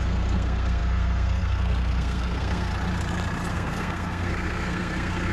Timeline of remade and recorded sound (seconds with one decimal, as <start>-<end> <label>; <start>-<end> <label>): 0.0-2.7 remade; 2.7-3.5 recorded; 3.5-5.3 remade